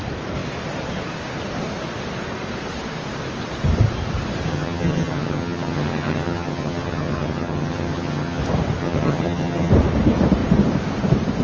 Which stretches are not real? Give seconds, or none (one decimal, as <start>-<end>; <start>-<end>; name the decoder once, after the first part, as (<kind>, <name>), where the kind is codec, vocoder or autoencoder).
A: 4.5-8.4 (vocoder, HiFi-GAN); 8.8-9.7